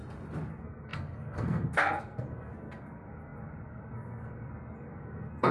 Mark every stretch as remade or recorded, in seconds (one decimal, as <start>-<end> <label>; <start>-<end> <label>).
0.0-0.5 recorded; 0.5-5.5 remade